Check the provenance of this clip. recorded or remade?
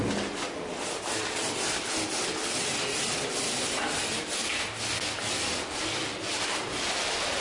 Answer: recorded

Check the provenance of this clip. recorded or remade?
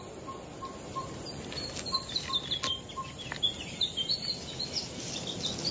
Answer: recorded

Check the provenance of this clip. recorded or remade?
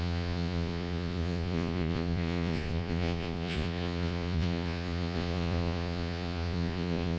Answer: remade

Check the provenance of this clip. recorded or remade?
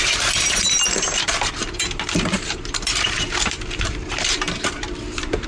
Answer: remade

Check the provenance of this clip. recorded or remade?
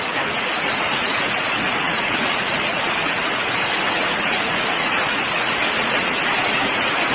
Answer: remade